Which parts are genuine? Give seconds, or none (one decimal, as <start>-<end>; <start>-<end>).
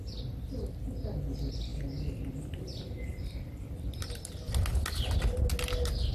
0.0-6.1